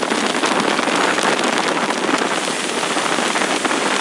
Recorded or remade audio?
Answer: recorded